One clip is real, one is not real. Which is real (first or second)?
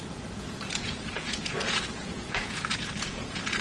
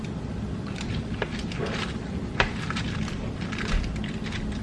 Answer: second